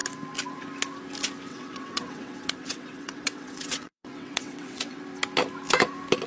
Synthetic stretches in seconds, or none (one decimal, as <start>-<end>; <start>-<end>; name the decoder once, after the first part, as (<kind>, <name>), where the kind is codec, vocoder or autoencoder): 1.5-5.0 (vocoder, WaveNeXt)